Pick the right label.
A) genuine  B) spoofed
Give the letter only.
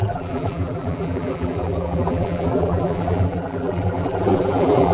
B